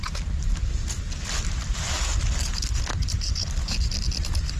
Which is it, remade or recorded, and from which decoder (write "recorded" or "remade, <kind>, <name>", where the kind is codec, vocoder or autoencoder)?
recorded